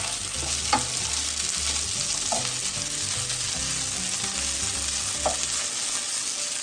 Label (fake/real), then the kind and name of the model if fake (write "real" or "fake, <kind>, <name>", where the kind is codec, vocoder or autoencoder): real